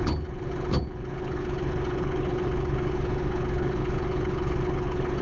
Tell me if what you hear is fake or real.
fake